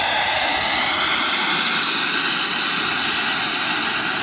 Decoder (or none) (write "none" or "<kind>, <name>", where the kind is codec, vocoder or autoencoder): none